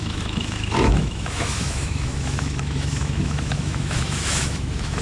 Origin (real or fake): fake